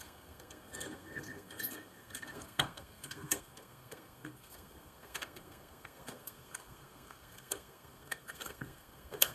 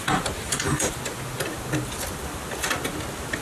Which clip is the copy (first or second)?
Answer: first